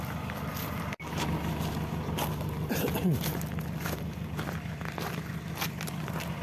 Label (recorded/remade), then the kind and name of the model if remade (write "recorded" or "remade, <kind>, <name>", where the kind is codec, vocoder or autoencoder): recorded